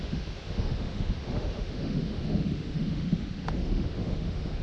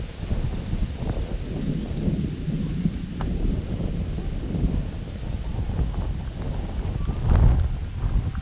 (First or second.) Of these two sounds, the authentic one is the second